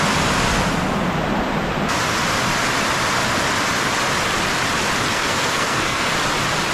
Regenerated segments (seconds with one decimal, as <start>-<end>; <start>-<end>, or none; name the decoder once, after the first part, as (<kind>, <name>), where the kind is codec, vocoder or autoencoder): 5.1-6.1 (codec, SNAC)